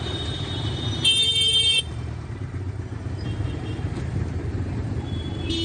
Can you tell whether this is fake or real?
fake